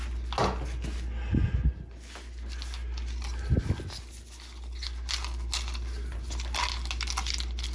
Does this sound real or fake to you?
real